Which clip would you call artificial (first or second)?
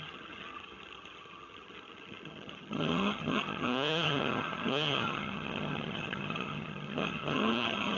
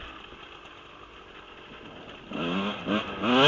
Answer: first